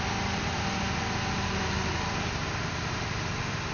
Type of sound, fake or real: real